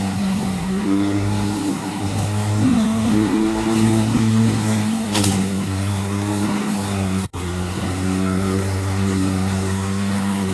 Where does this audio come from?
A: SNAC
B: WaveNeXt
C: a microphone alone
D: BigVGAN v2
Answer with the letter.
A